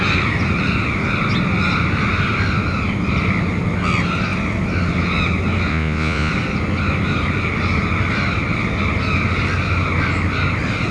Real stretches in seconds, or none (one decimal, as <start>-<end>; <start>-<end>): 0.0-5.7; 6.3-10.9